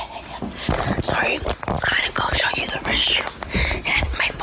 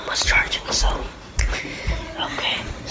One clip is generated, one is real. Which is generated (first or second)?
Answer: second